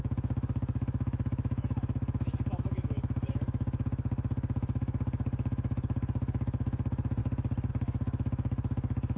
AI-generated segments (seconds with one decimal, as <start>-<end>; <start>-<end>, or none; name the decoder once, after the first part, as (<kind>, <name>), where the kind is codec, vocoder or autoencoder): 0.0-7.2 (autoencoder, DAC-VAE); 7.7-9.2